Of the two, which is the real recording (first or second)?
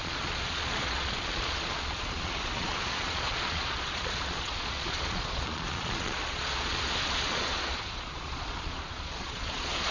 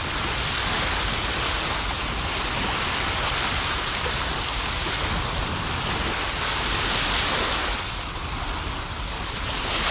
second